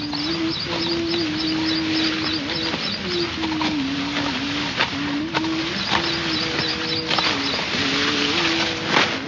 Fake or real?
real